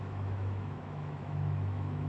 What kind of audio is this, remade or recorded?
remade